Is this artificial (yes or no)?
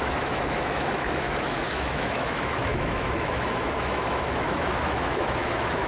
yes